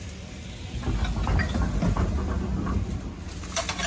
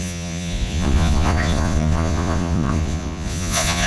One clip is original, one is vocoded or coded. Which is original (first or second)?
first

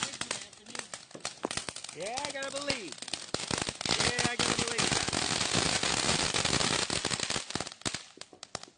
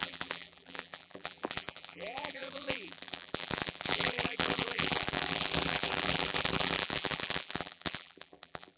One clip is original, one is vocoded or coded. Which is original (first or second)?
first